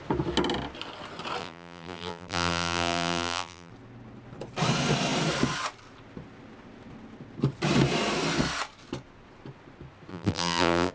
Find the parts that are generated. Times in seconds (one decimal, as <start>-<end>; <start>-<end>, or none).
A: 1.4-3.7; 10.1-10.9